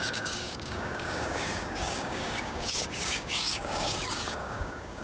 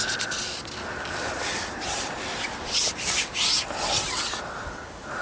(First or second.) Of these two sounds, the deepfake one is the first